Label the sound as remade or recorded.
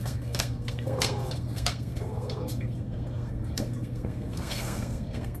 remade